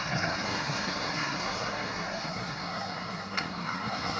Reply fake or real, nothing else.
fake